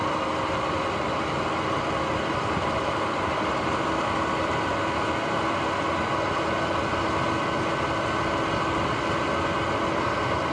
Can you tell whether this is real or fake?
real